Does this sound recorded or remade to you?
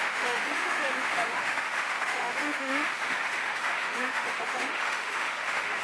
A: remade